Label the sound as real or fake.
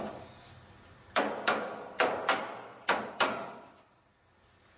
fake